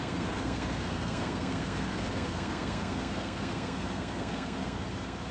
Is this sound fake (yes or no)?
yes